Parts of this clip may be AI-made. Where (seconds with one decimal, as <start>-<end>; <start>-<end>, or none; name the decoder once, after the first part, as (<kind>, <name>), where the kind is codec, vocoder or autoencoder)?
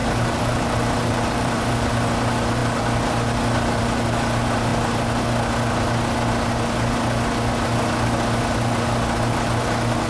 0.0-1.9 (vocoder, BigVGAN v2)